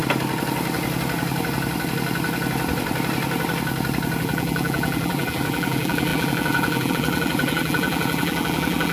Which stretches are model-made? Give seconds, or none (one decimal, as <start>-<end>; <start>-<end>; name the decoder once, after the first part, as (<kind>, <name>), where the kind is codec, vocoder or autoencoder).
4.2-8.9 (vocoder, BigVGAN v2)